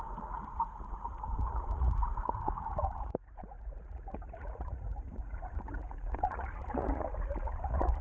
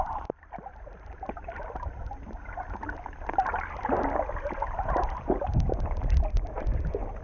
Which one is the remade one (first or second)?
first